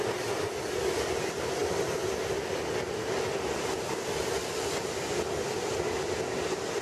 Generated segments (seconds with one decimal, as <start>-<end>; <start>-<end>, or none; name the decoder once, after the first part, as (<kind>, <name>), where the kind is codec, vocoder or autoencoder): none